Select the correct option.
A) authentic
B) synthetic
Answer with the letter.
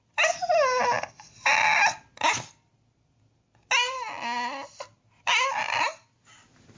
A